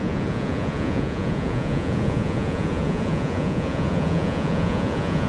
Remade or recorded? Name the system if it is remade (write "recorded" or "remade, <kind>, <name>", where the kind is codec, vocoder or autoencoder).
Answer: remade, vocoder, Vocos